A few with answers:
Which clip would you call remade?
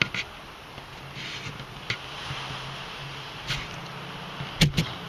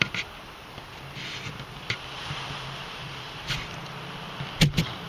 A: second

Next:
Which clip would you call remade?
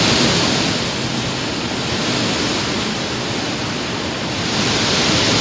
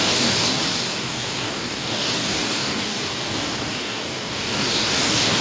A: second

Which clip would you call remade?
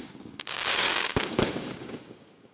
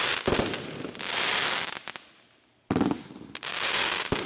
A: first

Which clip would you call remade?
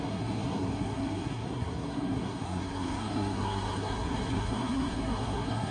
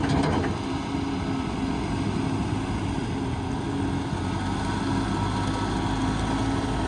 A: first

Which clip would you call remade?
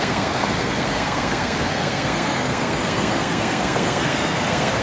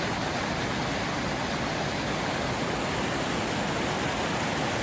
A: first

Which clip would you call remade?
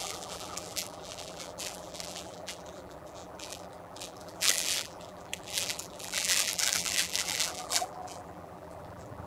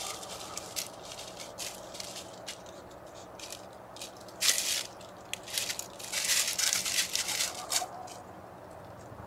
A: first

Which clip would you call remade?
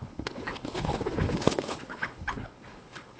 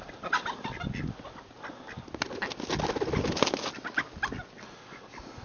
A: first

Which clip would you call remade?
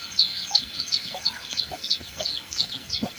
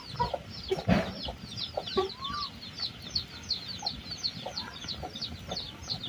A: first